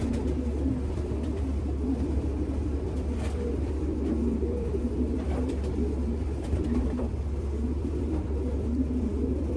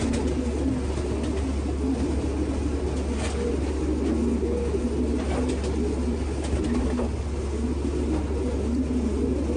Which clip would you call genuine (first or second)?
second